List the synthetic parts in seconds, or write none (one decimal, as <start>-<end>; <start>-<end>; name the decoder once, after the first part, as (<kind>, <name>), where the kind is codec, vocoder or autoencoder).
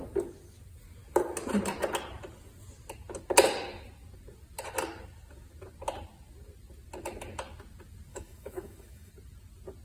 8.1-9.1 (autoencoder, DAC-VAE)